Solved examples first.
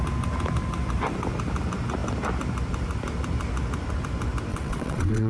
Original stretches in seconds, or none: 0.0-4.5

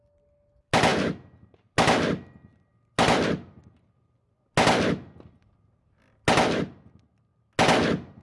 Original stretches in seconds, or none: 0.0-8.2